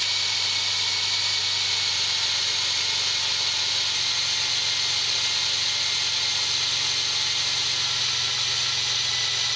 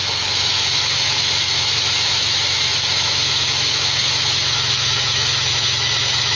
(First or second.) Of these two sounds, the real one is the first